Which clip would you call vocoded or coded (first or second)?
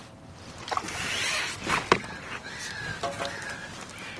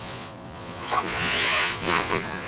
second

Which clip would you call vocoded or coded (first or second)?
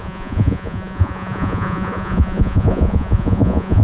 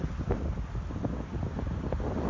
first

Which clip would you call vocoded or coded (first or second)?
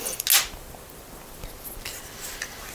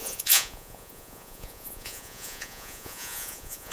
second